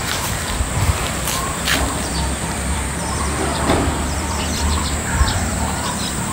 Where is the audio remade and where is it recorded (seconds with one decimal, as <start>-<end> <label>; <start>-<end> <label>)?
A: 0.0-6.3 remade